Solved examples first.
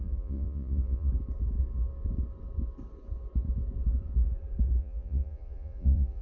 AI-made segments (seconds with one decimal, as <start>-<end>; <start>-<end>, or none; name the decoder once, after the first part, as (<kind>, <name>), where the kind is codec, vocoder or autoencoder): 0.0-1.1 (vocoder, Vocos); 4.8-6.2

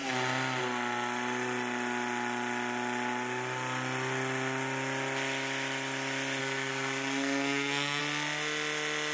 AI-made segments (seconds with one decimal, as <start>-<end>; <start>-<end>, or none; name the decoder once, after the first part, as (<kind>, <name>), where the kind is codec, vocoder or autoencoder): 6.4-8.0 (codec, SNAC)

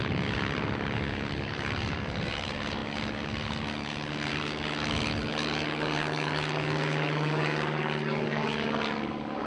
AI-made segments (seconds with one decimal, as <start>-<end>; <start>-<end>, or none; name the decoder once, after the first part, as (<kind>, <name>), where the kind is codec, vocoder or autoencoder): 0.0-9.5 (codec, DAC)

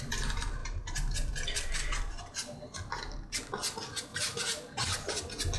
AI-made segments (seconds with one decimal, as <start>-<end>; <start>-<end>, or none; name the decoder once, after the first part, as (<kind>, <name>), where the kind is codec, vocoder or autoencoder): 0.6-2.2 (vocoder, BigVGAN v2); 4.1-5.1

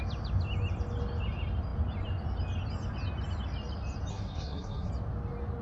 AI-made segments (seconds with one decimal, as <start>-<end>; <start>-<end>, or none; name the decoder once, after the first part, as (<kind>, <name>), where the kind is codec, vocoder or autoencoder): 4.1-4.9 (codec, SNAC)

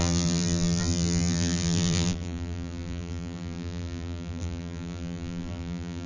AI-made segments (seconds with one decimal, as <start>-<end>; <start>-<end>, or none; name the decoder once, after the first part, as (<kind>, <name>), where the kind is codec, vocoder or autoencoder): 0.0-6.1 (vocoder, BigVGAN v2)

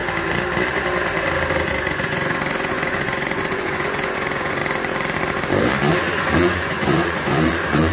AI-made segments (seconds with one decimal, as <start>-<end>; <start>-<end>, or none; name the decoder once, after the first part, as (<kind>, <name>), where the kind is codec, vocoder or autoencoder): 1.7-4.6 (vocoder, Vocos); 5.9-7.9